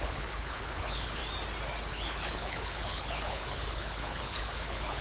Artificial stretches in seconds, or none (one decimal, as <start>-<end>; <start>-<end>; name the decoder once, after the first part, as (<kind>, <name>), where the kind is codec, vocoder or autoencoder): 0.0-1.2 (codec, HILCodec); 1.9-5.0